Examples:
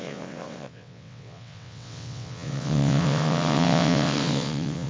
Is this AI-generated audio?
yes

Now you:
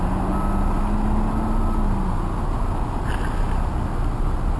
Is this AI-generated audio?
no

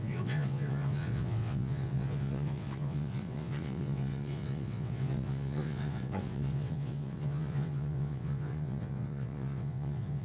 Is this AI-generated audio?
yes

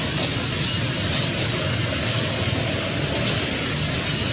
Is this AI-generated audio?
no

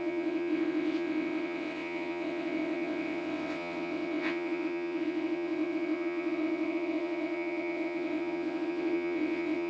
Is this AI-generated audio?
yes